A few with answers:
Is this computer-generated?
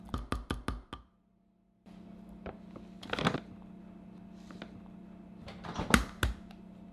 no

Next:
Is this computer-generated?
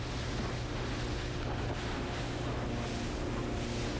no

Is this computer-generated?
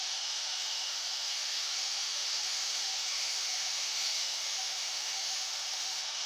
yes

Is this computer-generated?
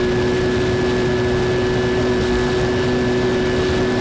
no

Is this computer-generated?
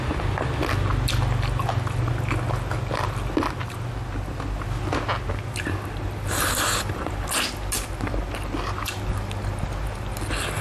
no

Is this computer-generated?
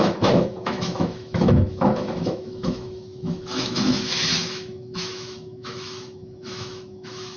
yes